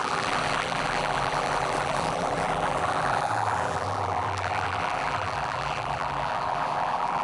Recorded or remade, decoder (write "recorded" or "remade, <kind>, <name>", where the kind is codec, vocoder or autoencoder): remade, vocoder, BigVGAN v2